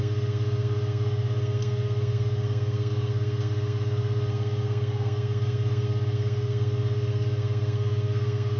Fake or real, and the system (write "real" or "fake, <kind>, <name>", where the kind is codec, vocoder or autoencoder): fake, codec, SNAC